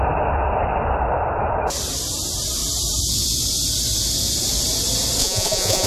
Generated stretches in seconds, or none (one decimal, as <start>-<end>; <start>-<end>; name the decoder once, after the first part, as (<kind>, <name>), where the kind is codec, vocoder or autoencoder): 5.2-5.9 (vocoder, Vocos)